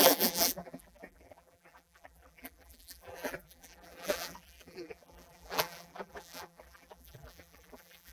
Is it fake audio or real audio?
fake